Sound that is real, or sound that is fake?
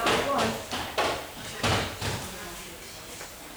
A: real